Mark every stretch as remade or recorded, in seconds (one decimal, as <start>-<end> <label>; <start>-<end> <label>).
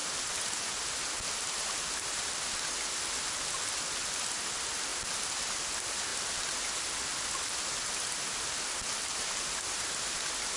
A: 0.0-10.6 recorded